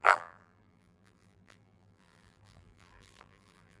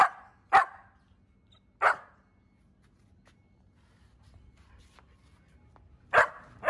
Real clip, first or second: second